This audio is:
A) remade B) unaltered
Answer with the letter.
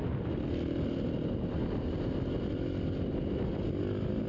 B